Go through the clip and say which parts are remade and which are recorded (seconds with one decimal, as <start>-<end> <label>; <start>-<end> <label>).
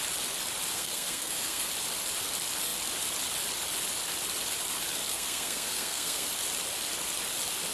0.0-0.7 recorded; 0.7-1.7 remade; 1.7-5.1 recorded; 5.1-6.3 remade; 6.3-7.7 recorded